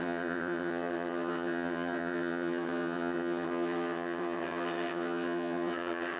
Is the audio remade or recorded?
remade